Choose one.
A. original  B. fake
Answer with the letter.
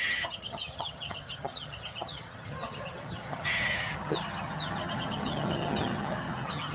B